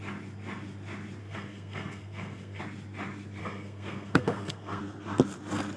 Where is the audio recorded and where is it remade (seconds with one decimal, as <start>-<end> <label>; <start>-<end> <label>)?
0.0-1.2 recorded; 1.2-2.6 remade; 2.6-3.4 recorded; 3.4-4.8 remade; 4.8-5.8 recorded